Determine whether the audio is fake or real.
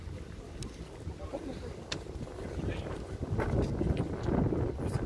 real